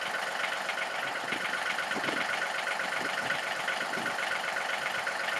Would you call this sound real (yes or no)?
no